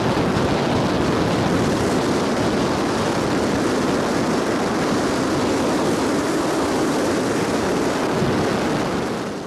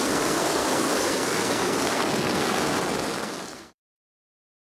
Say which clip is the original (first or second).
first